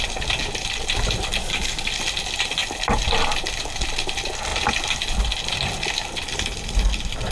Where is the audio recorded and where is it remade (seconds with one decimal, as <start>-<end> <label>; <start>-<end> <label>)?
0.0-1.4 recorded; 1.4-1.9 remade; 1.9-7.3 recorded